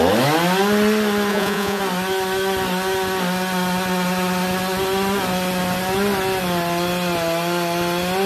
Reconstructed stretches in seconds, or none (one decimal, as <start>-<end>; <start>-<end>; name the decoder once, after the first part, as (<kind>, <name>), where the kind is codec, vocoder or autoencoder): 1.3-1.8 (vocoder, Vocos)